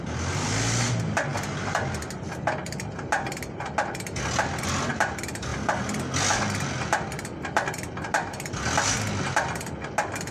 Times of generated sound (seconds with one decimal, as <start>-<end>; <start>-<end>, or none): none